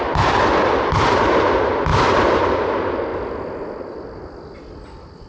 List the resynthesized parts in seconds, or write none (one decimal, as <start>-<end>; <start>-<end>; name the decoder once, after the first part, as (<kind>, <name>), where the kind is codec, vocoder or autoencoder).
none

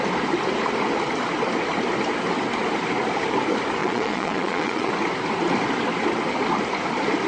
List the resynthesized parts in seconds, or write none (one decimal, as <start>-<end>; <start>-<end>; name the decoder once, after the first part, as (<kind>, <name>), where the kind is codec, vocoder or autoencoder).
3.8-4.9 (vocoder, Vocos)

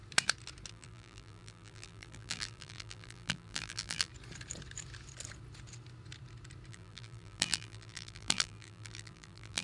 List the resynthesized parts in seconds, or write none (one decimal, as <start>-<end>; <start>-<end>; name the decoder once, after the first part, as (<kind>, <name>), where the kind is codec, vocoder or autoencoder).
0.7-4.1 (vocoder, BigVGAN v2); 6.7-9.6

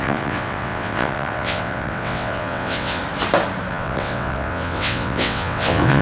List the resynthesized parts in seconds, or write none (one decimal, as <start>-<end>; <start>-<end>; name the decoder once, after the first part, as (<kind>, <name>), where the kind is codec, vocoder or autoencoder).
0.0-3.0 (vocoder, WaveNeXt); 3.7-6.0

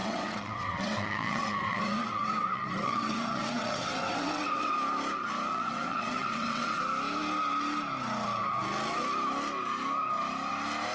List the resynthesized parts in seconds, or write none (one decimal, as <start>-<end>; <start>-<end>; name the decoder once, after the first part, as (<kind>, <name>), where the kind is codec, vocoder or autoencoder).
0.0-4.7 (vocoder, WaveNeXt); 5.5-6.8

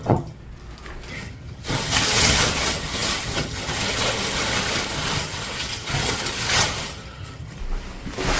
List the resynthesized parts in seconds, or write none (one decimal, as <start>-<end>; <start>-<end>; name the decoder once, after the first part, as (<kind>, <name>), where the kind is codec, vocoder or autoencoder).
0.0-0.4 (vocoder, HiFi-GAN); 1.1-7.6